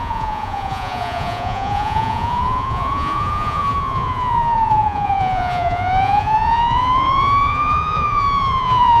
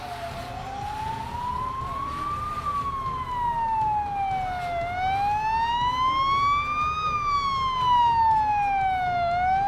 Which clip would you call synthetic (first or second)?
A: first